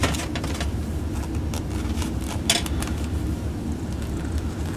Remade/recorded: recorded